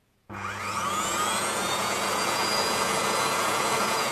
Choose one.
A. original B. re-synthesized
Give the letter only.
B